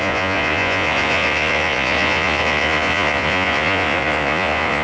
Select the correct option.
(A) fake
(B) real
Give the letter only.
A